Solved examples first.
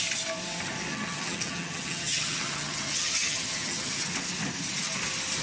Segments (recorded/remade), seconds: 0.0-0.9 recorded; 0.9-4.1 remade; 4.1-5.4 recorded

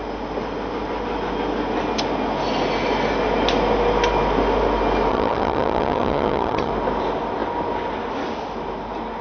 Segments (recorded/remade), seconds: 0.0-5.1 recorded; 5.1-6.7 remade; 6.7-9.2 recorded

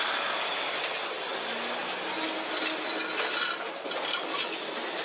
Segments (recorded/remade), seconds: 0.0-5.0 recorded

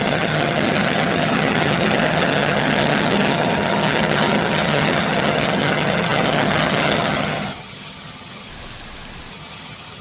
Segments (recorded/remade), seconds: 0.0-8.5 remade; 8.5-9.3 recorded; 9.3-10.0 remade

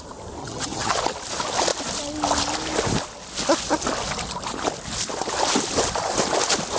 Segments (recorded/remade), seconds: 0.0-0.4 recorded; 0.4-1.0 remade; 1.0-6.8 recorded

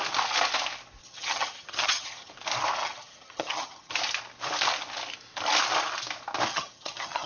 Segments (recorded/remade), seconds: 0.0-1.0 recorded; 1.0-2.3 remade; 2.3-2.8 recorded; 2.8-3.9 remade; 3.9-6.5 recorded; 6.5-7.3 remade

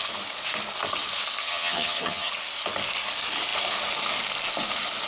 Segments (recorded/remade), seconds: 0.0-1.4 recorded; 1.4-2.3 remade; 2.3-5.1 recorded

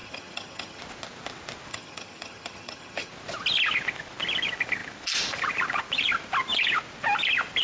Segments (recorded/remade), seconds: 0.0-0.8 remade; 0.8-1.7 recorded; 1.7-3.1 remade; 3.1-7.6 recorded